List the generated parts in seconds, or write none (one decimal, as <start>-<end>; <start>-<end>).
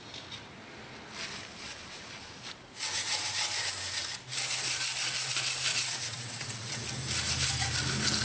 5.7-6.8